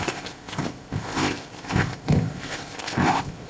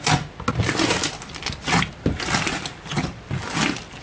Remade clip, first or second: first